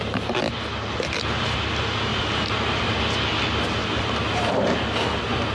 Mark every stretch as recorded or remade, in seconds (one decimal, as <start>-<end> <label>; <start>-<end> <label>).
0.0-2.1 recorded; 2.1-3.0 remade; 3.0-5.5 recorded